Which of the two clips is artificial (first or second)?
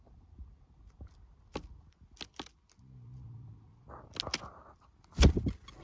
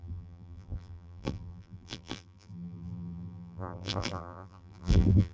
second